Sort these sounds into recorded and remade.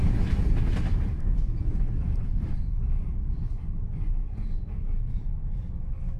recorded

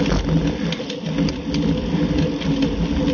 recorded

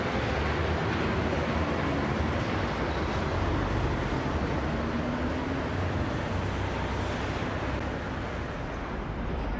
recorded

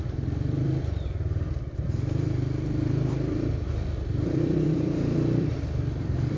remade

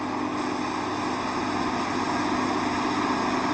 recorded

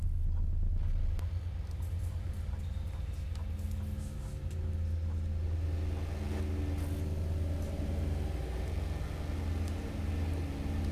recorded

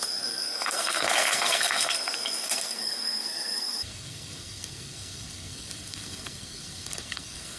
remade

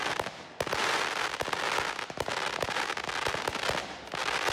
recorded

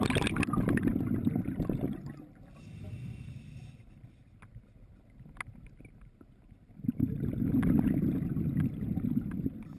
recorded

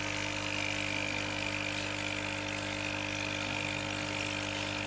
recorded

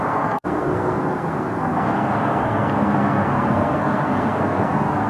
remade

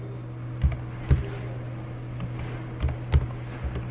recorded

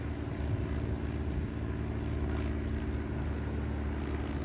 recorded